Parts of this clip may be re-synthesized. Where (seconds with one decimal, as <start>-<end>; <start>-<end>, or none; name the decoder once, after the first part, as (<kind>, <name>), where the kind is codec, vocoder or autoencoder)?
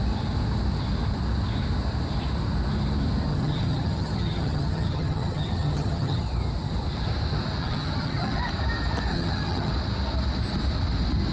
3.3-6.2 (vocoder, HiFi-GAN); 7.6-8.4; 9.1-9.7